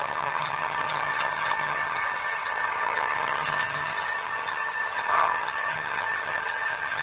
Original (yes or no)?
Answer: no